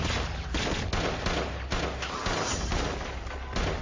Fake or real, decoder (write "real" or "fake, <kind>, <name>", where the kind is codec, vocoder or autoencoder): real